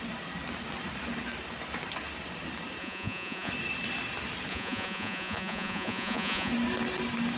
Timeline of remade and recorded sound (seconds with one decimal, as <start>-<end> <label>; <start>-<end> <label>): 0.0-2.8 recorded; 2.8-3.5 remade; 3.5-4.5 recorded; 4.5-6.5 remade; 6.5-7.4 recorded

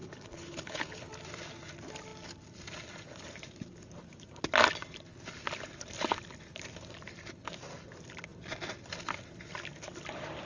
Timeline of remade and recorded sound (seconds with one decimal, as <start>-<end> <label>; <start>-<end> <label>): 0.0-1.1 remade; 1.1-10.5 recorded

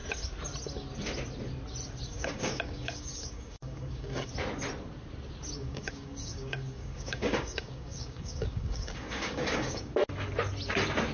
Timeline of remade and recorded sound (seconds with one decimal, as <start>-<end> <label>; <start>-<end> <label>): 0.0-2.1 recorded; 2.1-4.3 remade; 4.3-5.6 recorded; 5.6-9.9 remade; 9.9-11.1 recorded

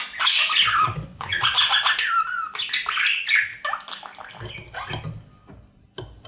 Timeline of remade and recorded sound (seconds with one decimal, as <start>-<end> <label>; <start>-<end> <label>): 0.0-1.1 recorded; 1.1-1.8 remade; 1.8-6.3 recorded

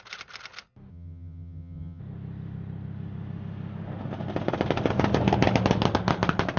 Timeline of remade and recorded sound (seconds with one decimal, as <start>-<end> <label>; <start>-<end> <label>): 0.0-0.9 recorded; 0.9-2.0 remade; 2.0-6.6 recorded